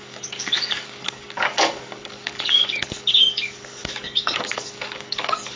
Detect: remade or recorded remade